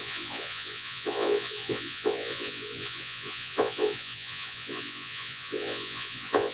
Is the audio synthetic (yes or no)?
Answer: yes